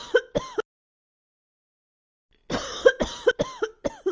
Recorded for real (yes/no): yes